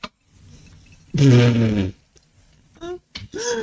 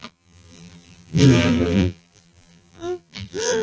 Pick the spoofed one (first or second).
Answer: second